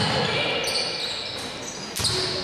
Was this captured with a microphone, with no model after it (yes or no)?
yes